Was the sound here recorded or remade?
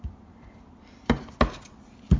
recorded